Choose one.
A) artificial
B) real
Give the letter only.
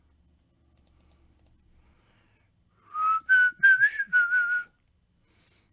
B